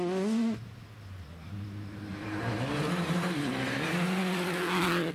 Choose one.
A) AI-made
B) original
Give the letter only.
B